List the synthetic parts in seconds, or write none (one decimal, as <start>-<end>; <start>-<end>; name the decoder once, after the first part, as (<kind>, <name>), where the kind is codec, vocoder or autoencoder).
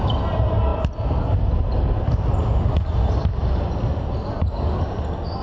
none